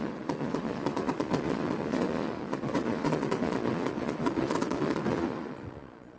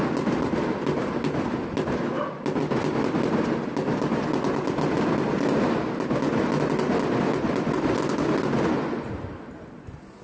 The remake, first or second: first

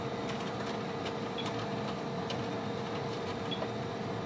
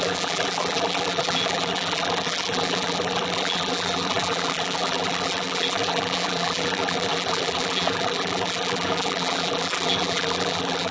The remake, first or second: second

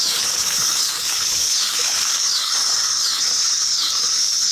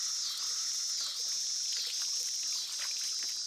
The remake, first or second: first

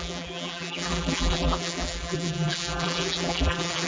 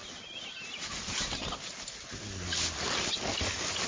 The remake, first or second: first